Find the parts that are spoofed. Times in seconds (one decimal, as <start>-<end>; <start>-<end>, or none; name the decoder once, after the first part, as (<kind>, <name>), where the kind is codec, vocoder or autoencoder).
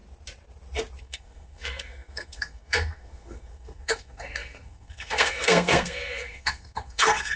1.0-7.4 (codec, SNAC)